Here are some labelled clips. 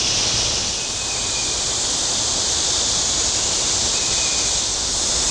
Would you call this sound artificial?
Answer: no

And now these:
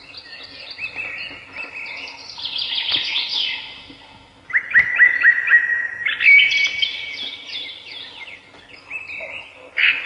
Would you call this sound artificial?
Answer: no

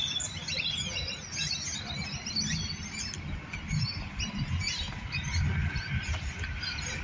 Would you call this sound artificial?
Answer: no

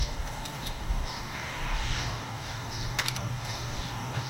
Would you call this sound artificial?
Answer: yes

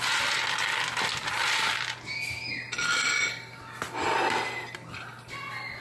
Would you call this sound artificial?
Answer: no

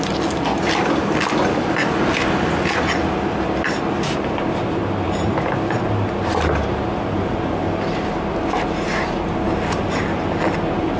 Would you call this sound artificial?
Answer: no